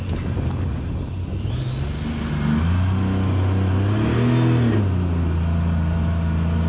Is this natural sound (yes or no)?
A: yes